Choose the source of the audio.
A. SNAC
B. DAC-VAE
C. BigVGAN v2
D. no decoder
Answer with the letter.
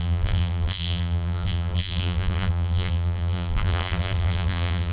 C